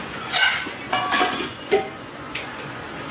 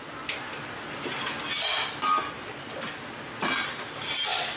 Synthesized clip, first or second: first